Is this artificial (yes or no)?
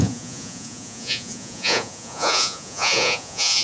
yes